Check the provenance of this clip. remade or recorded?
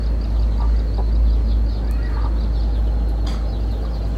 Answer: recorded